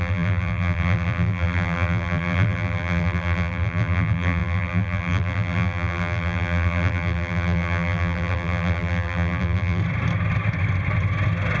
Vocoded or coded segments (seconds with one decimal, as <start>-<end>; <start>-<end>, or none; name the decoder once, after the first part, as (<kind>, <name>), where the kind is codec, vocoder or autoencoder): 0.0-9.8 (vocoder, BigVGAN v2)